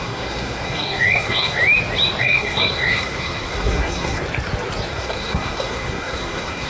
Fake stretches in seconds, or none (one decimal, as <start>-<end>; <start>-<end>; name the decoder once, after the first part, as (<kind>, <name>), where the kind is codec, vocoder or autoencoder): 0.0-1.6 (codec, SNAC); 2.2-4.2; 4.9-6.7